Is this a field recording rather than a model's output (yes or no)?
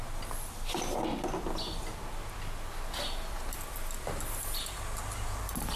yes